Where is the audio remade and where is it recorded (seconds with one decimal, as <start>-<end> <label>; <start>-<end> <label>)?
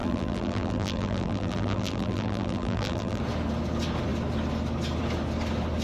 0.0-3.2 remade; 3.2-5.8 recorded